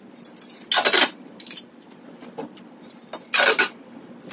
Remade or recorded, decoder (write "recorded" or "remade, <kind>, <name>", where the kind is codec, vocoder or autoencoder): recorded